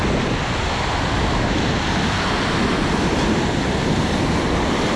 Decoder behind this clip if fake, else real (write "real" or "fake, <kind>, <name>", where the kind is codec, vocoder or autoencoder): real